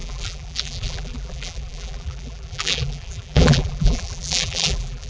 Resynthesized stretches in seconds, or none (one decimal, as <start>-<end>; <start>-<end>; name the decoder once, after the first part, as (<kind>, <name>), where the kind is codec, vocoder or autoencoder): 0.0-5.1 (vocoder, BigVGAN v2)